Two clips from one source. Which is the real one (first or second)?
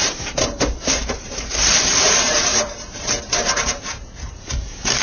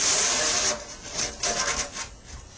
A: second